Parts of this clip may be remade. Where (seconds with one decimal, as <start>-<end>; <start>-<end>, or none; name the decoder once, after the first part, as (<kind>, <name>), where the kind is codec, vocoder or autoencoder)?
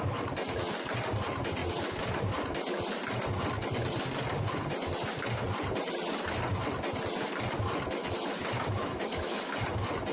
8.0-9.6 (autoencoder, DAC-VAE)